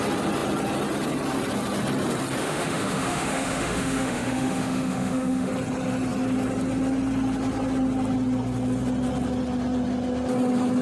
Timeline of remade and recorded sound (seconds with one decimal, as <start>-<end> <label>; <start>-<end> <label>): 0.0-2.4 recorded; 2.4-5.5 remade; 5.5-10.8 recorded